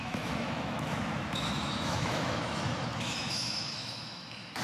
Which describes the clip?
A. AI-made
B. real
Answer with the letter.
A